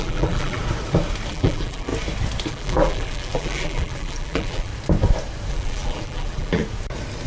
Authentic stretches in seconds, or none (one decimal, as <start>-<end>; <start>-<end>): 0.6-1.3; 1.9-2.5; 4.7-5.5; 6.6-7.3